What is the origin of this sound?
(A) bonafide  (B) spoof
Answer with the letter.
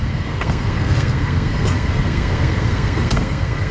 B